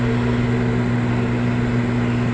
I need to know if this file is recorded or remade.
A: recorded